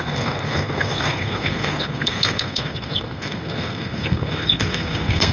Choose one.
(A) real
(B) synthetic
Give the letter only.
B